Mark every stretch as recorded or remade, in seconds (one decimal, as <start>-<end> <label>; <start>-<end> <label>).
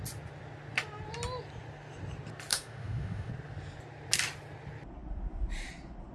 0.0-2.5 recorded; 2.5-3.3 remade; 3.3-6.1 recorded